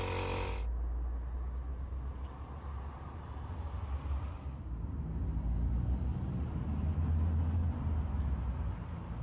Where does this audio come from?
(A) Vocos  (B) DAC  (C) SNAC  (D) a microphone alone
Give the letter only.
D